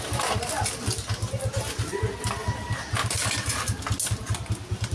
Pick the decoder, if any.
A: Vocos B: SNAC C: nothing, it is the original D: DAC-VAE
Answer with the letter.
C